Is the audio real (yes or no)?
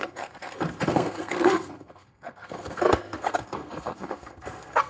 no